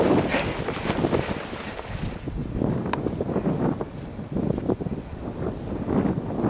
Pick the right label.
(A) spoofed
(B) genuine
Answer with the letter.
B